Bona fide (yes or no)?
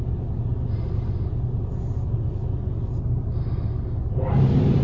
yes